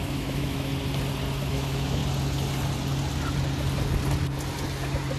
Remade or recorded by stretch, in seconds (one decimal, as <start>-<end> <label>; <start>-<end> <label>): 0.0-0.7 remade; 0.7-1.5 recorded; 1.5-2.0 remade; 2.0-5.2 recorded